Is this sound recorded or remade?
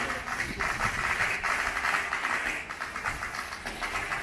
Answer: recorded